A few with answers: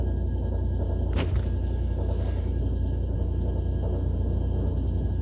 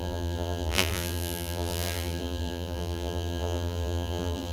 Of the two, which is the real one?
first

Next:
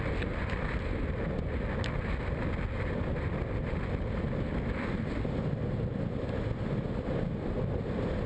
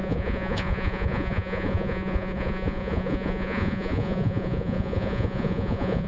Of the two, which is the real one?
first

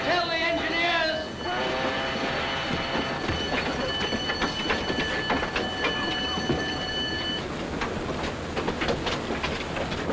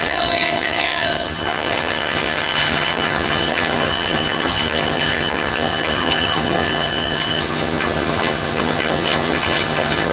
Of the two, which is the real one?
first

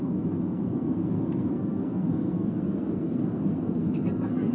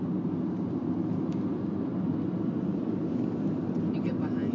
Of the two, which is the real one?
second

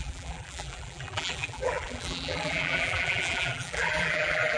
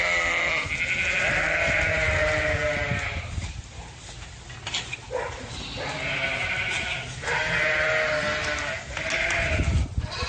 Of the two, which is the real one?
second